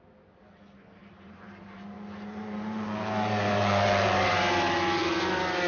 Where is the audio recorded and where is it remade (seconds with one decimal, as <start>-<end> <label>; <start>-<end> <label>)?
0.0-1.0 recorded; 1.0-4.4 remade; 4.4-5.7 recorded